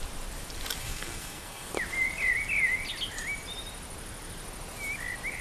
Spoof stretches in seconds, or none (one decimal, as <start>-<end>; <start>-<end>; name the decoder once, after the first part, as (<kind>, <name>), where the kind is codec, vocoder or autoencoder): 0.8-1.7 (codec, SNAC)